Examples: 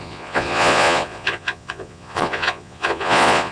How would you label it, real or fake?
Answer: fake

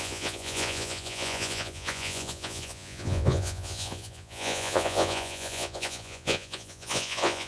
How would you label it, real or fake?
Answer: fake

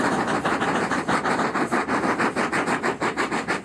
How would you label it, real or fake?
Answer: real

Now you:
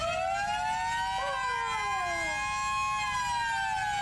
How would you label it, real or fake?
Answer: real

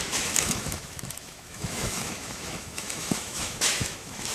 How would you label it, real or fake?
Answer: fake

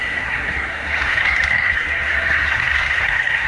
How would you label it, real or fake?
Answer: fake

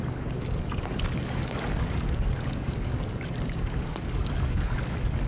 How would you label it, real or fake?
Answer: fake